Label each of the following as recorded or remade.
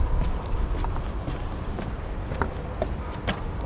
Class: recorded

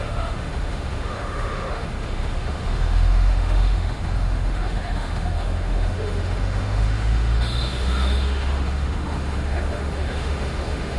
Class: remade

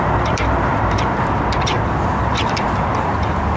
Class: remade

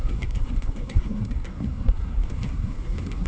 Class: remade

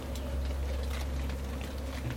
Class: recorded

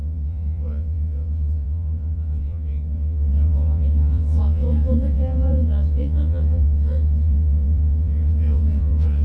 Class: remade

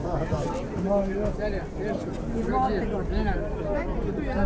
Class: recorded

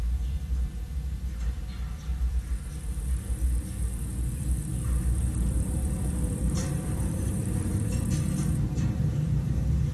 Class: remade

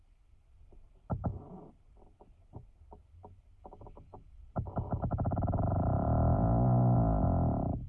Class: recorded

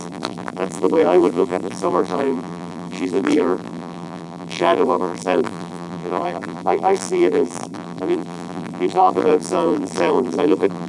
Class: remade